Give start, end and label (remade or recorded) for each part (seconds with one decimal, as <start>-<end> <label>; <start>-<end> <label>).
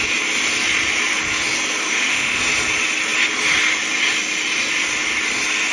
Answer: 0.0-1.8 recorded; 1.8-2.4 remade; 2.4-5.7 recorded